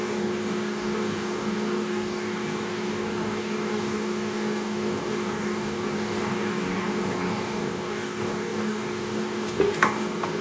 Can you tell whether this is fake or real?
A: fake